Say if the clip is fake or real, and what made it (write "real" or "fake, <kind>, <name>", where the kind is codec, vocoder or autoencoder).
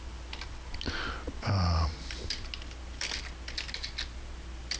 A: real